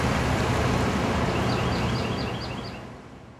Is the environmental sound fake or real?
real